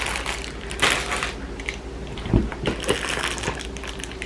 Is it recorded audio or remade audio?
recorded